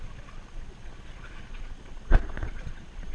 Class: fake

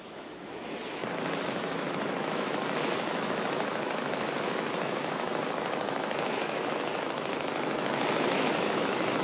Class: fake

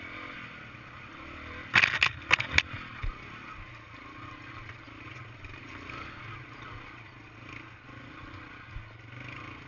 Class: real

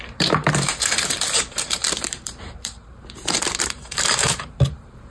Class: fake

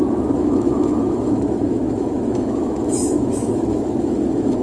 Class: fake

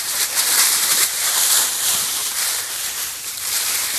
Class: fake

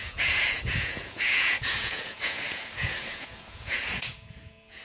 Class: fake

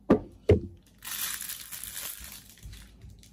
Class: real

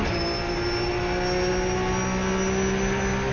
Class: real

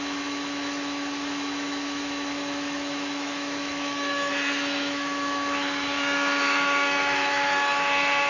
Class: fake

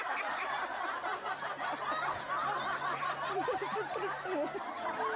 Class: real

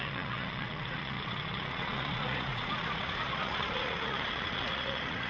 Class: fake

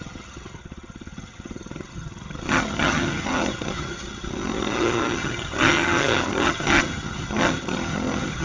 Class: fake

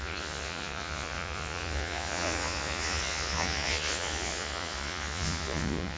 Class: fake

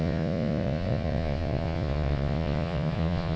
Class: fake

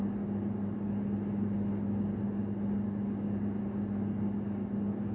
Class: real